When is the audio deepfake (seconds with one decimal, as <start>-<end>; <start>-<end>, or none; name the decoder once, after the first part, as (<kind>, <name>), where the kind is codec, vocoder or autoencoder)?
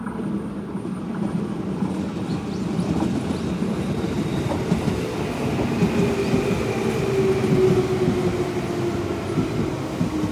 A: none